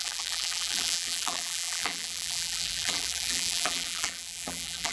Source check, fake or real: fake